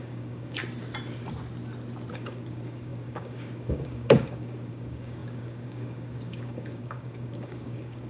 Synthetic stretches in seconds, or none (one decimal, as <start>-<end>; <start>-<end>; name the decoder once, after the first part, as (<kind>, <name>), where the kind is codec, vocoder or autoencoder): 0.0-0.6 (codec, DAC); 2.1-8.1